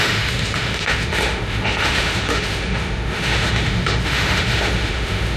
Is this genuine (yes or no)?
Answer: no